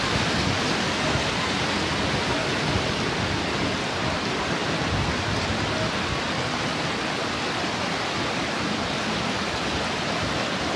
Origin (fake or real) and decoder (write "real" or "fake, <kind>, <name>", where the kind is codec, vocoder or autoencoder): real